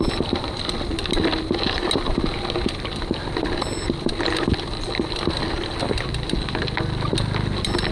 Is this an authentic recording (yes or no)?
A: yes